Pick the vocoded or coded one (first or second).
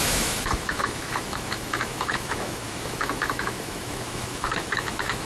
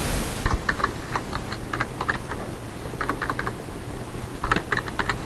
first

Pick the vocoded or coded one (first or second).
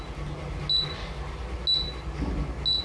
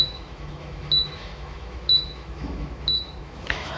second